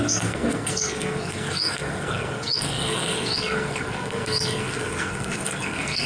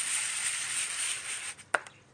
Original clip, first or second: second